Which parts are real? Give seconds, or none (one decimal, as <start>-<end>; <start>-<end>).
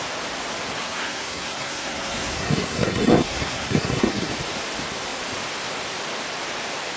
0.0-0.8; 4.3-7.0